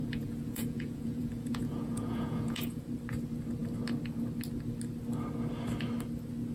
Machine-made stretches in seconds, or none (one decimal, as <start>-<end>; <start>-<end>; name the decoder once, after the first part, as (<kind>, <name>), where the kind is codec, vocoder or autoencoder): 0.0-2.8 (vocoder, Vocos)